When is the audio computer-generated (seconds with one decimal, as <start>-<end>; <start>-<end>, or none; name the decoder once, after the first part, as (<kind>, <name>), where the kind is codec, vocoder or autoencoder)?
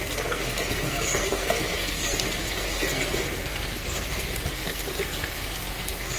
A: 0.0-6.2 (codec, SNAC)